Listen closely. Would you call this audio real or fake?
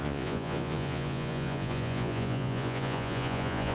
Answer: fake